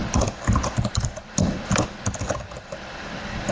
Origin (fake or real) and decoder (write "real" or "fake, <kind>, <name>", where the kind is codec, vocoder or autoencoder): real